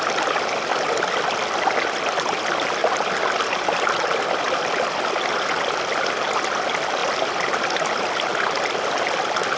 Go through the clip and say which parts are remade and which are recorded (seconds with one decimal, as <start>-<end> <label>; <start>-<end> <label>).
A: 0.0-9.6 recorded